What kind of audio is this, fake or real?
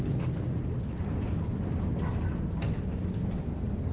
real